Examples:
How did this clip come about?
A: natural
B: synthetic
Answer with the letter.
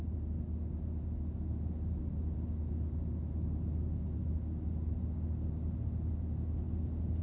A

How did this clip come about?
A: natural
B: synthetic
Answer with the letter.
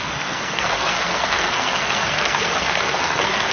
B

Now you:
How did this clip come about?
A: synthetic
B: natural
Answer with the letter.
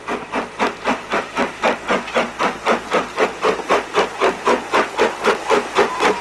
B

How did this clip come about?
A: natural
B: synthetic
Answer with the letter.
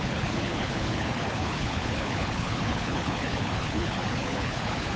B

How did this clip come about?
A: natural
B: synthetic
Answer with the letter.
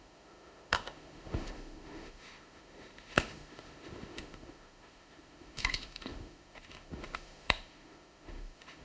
B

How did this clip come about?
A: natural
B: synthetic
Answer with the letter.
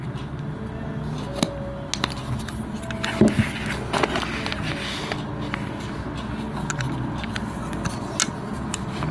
A